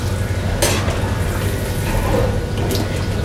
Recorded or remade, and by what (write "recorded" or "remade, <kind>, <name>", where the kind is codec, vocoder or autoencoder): recorded